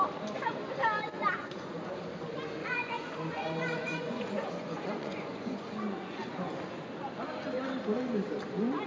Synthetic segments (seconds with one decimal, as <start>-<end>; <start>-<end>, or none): 1.4-2.0; 2.6-6.6